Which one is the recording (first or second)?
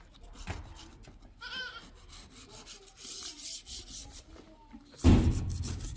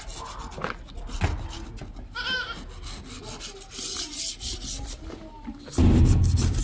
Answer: second